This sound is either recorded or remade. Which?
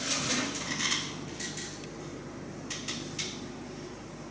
recorded